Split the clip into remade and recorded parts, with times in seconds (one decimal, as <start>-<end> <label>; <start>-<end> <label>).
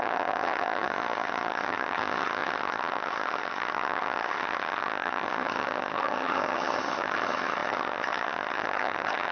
0.0-9.3 remade